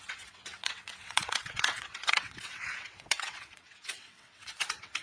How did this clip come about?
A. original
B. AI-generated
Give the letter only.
B